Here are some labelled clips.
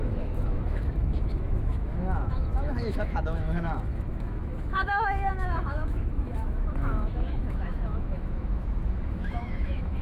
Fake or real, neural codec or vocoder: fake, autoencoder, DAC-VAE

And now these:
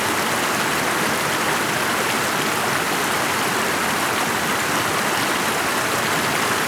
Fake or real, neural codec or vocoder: real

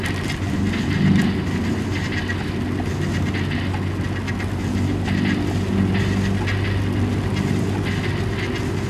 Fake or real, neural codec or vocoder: real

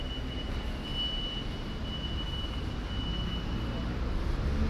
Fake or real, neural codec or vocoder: real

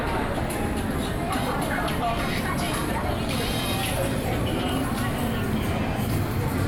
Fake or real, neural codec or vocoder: real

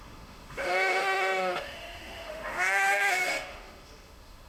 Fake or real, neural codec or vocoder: fake, autoencoder, DAC-VAE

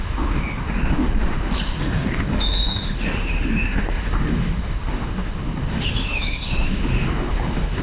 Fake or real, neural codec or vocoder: fake, autoencoder, DAC-VAE